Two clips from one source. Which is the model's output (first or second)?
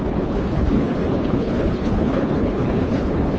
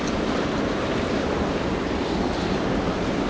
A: first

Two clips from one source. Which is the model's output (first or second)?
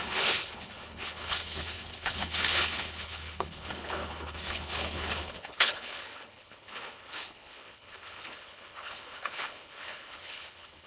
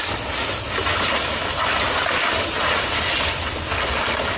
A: first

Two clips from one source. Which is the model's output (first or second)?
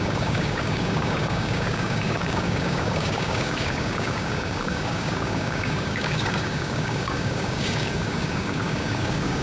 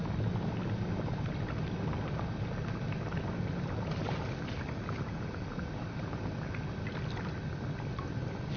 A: first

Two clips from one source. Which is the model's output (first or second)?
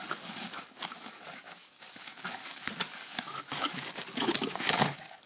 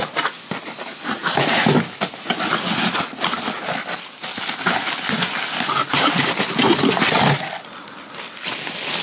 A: first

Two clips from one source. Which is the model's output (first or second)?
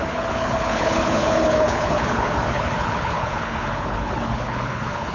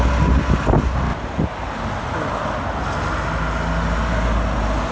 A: first